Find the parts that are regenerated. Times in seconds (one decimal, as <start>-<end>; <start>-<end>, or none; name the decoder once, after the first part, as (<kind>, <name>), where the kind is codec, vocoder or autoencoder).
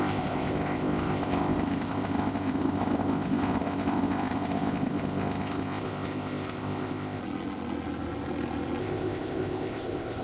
0.0-7.2 (codec, ZipCodec); 8.8-10.2